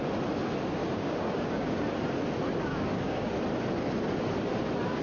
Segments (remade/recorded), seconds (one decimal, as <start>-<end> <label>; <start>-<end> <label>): 0.0-0.8 recorded; 0.8-1.8 remade; 1.8-2.7 recorded; 2.7-3.3 remade; 3.3-5.0 recorded